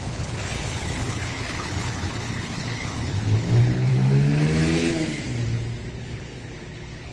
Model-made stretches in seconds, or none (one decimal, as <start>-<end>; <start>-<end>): 0.0-3.9; 5.9-7.1